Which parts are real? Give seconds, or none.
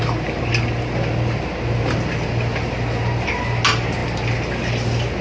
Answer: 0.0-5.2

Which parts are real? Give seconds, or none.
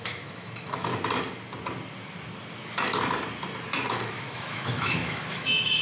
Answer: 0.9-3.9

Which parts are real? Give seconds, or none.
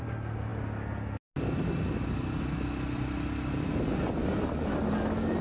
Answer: 0.0-5.4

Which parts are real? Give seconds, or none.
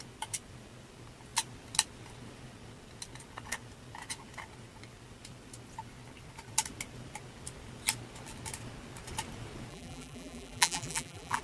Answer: 0.0-9.7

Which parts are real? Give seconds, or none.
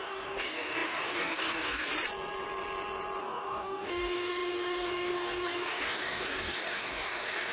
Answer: 1.9-3.2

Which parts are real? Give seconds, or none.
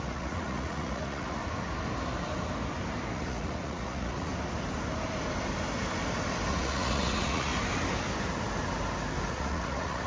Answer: 1.4-3.1; 4.3-6.5; 7.5-9.3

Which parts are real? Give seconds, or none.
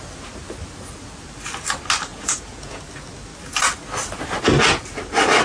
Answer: 0.0-2.1; 2.8-5.4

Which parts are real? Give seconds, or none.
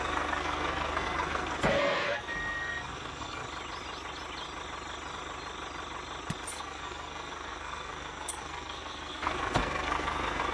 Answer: 3.4-6.5